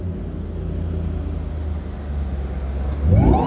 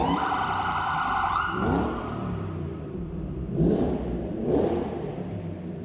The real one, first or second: first